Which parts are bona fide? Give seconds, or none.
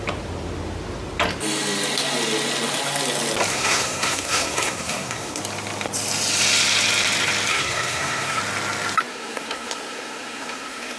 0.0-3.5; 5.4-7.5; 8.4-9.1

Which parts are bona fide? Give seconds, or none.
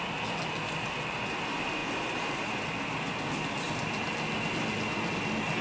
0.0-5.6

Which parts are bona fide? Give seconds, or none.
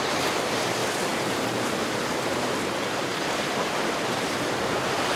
0.0-0.8; 2.7-3.1; 3.8-5.2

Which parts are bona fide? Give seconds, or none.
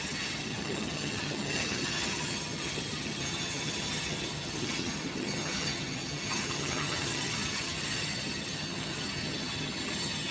none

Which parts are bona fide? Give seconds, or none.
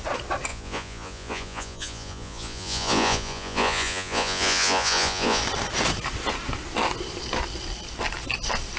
0.0-0.5; 5.4-8.8